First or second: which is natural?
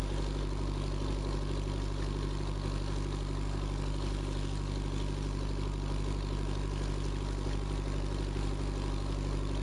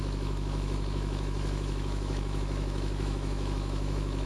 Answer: first